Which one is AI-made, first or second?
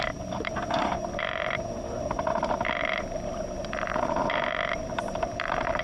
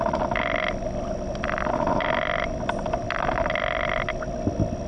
first